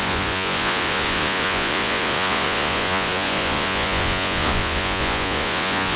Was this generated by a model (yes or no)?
yes